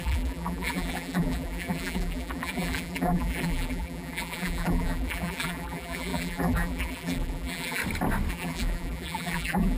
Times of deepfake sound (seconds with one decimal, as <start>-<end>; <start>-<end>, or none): 0.0-7.8; 8.3-9.8